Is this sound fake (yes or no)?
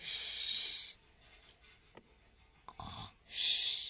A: no